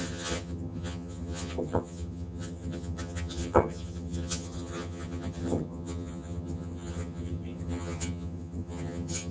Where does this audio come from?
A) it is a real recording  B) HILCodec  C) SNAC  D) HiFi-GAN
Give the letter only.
D